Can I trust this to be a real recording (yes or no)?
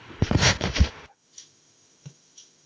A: no